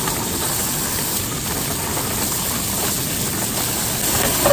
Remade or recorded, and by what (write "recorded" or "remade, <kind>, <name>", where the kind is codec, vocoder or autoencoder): recorded